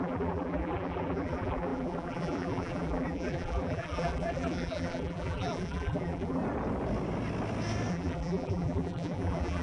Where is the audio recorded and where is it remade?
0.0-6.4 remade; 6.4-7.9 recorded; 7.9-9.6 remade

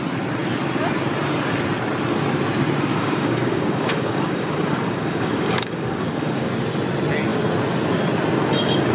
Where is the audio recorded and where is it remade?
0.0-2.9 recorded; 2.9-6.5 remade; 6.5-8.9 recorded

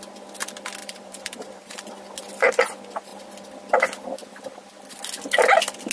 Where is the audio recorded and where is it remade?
0.0-0.8 recorded; 0.8-1.8 remade; 1.8-5.9 recorded